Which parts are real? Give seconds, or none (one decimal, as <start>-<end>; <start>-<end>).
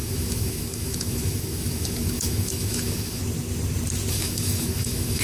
3.2-4.1